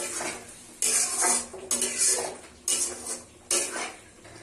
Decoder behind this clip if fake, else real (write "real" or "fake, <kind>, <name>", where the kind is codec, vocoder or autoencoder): real